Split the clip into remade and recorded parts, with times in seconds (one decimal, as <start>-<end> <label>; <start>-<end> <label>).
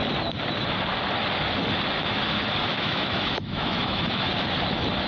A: 0.0-2.7 recorded; 2.7-4.3 remade; 4.3-5.1 recorded